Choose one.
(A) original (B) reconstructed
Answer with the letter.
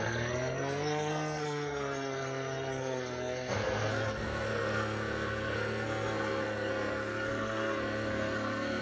B